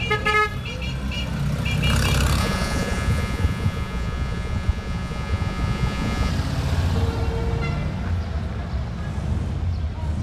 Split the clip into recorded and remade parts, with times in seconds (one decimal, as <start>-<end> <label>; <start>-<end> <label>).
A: 0.0-2.4 recorded; 2.4-6.3 remade; 6.3-10.2 recorded